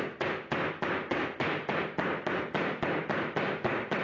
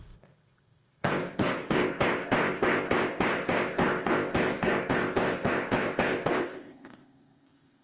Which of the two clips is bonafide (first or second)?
first